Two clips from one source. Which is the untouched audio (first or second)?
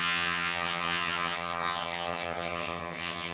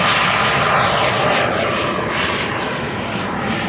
second